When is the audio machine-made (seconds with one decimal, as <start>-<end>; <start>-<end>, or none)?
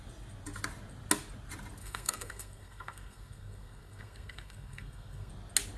1.8-5.3